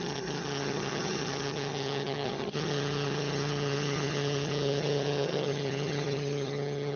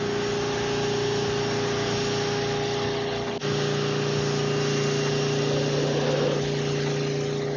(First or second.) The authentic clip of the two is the second